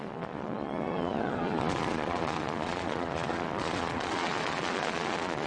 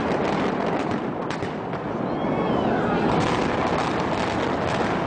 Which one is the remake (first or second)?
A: first